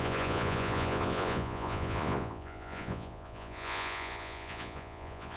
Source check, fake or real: fake